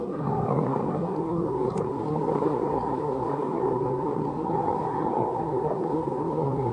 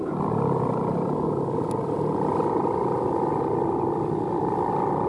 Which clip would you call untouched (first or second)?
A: second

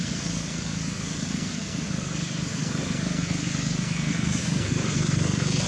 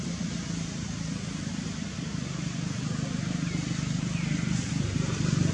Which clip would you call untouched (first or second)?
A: second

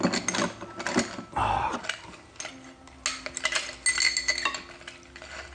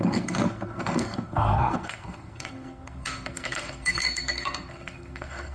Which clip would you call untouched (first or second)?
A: first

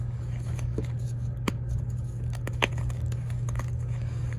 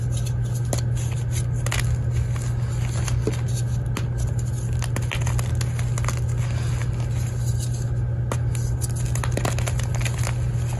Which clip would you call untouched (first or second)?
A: second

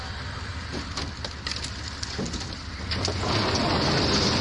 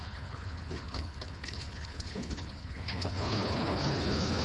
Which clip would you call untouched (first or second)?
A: first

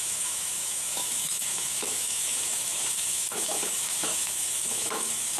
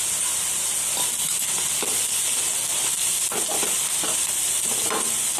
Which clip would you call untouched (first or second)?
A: second